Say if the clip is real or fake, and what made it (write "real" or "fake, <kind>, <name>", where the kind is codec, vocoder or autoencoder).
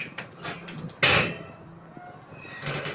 real